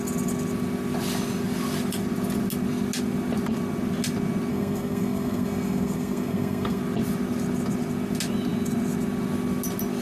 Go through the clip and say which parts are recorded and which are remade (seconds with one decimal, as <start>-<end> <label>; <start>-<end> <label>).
0.0-4.5 recorded; 4.5-6.8 remade; 6.8-10.0 recorded